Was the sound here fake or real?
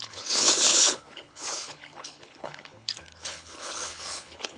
fake